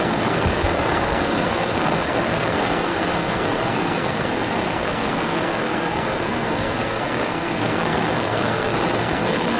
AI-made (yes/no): yes